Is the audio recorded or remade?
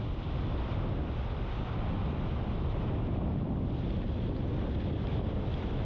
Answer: remade